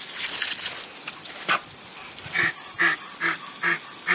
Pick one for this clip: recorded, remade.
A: remade